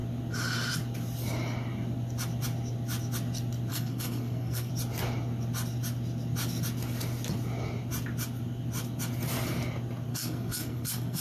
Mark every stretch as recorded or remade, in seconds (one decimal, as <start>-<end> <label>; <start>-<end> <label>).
0.0-3.7 recorded; 3.7-4.7 remade; 4.7-10.1 recorded; 10.1-11.2 remade